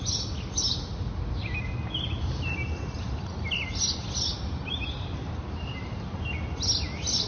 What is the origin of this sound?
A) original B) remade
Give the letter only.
A